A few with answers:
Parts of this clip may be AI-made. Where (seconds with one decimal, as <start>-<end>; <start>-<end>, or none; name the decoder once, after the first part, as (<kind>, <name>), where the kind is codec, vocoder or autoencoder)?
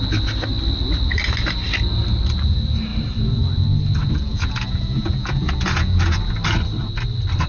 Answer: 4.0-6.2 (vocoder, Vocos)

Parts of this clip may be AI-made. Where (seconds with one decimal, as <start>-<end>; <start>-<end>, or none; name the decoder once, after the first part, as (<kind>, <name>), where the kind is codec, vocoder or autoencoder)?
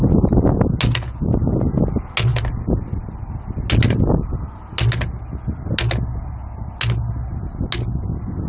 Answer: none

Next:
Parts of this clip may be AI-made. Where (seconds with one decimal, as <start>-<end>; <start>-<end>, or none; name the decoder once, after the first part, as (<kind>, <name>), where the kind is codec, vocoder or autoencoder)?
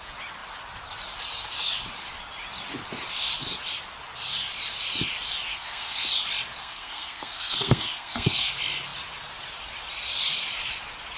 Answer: 5.5-6.1 (codec, SNAC); 6.6-8.5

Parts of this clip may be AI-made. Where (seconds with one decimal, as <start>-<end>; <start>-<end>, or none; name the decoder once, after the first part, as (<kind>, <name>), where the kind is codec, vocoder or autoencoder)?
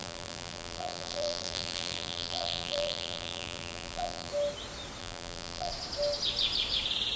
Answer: 0.0-4.3 (vocoder, BigVGAN v2); 5.0-5.7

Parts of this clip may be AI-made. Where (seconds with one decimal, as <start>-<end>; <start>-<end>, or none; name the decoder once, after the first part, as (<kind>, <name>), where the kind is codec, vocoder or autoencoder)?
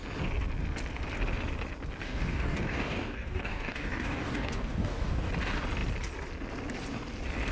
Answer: 2.0-5.3 (codec, DAC)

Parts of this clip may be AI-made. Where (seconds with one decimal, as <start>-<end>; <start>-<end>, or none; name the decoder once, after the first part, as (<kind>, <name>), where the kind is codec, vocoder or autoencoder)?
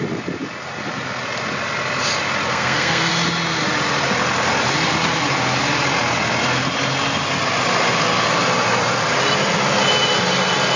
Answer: 2.5-3.1 (codec, SNAC)